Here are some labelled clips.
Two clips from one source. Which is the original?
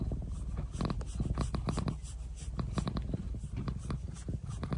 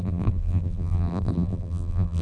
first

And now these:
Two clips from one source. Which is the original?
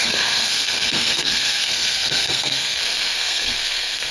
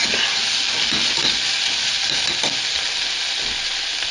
second